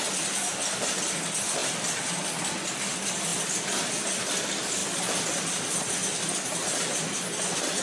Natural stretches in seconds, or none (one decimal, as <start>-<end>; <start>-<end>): 0.0-1.6; 2.1-7.8